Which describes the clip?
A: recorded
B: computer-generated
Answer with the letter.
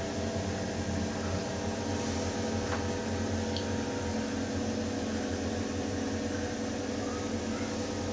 A